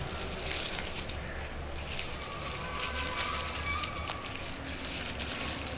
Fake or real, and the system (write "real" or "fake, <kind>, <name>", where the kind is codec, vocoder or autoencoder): real